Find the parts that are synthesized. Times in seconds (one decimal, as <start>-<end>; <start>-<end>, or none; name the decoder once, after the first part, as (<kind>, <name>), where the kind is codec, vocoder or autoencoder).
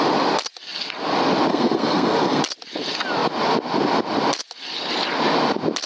1.5-2.4 (codec, SNAC)